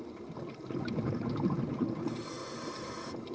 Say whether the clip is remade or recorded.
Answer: recorded